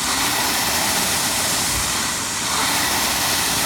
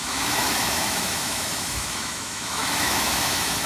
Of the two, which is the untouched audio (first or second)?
first